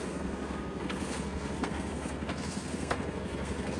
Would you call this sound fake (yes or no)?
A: yes